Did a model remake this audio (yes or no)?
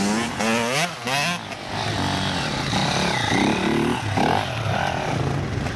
no